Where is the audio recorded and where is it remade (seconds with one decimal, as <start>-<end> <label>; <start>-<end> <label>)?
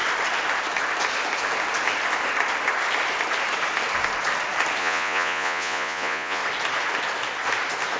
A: 0.0-4.8 recorded; 4.8-6.4 remade; 6.4-8.0 recorded